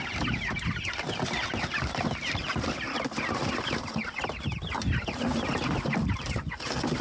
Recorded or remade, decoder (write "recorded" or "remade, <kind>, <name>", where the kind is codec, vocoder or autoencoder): recorded